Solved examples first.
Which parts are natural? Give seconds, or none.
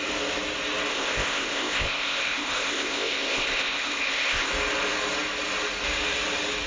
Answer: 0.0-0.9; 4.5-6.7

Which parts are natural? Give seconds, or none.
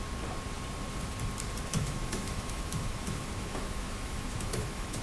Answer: 0.0-1.7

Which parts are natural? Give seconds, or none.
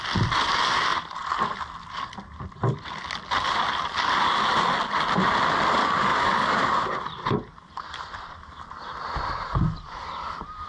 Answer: 0.0-6.1; 9.6-10.7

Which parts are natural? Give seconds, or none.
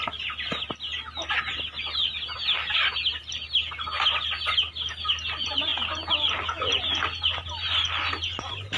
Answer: 0.0-8.8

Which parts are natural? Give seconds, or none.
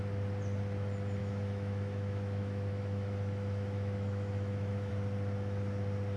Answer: 0.0-1.2; 4.9-6.2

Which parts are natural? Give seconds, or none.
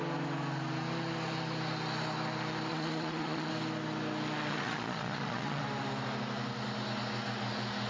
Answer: 0.0-2.7; 3.5-4.5; 5.6-7.9